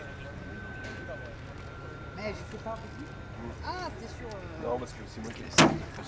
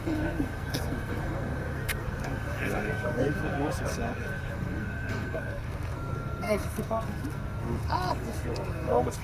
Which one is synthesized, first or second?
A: second